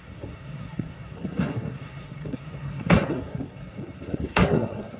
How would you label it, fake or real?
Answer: fake